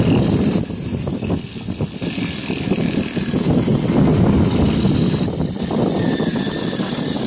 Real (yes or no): yes